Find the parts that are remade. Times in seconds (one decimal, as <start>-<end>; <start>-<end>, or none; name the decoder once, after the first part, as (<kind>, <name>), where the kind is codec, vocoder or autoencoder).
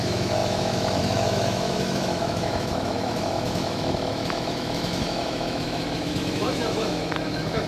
0.0-7.7 (autoencoder, DAC-VAE)